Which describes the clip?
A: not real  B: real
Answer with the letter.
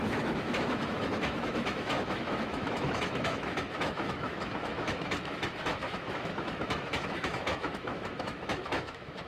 A